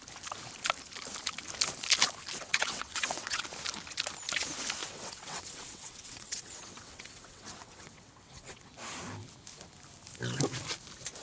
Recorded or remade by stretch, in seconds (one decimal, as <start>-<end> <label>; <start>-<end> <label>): 0.0-2.4 recorded; 2.4-3.4 remade; 3.4-4.8 recorded; 4.8-8.7 remade; 8.7-11.2 recorded